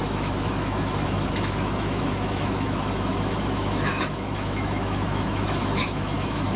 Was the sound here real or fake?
fake